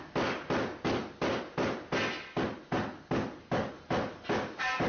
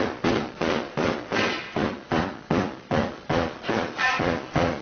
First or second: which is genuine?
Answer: first